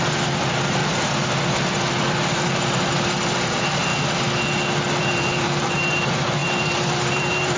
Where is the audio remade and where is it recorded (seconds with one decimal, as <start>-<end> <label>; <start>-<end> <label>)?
0.0-3.9 remade; 3.9-5.0 recorded; 5.0-7.6 remade